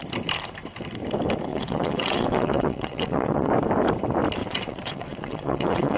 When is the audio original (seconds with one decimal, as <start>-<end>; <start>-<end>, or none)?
0.0-1.5; 3.5-4.4